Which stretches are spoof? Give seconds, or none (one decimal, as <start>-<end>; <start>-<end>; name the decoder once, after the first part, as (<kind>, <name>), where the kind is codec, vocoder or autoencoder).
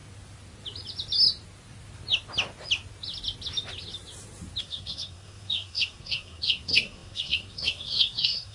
4.6-8.5 (codec, SNAC)